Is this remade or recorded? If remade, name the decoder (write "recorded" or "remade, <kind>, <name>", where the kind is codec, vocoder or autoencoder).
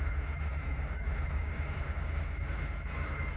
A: remade, autoencoder, DAC-VAE